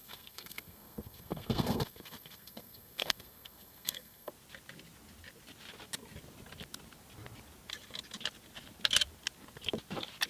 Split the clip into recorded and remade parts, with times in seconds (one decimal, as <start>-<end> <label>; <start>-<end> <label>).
0.0-4.3 remade; 4.3-10.3 recorded